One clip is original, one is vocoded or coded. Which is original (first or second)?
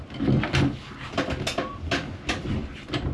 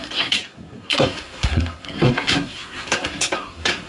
first